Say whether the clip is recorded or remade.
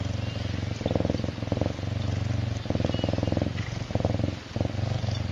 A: recorded